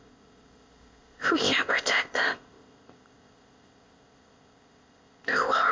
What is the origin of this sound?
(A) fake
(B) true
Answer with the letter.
A